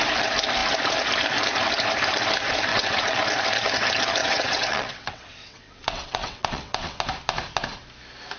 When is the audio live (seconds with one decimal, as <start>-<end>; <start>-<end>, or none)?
0.0-2.7; 3.2-4.2; 7.0-8.4